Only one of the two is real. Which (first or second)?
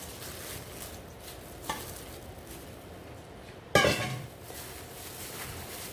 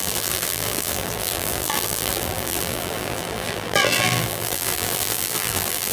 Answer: first